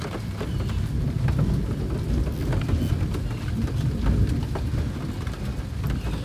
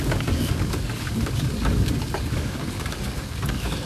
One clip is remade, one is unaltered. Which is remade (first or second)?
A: second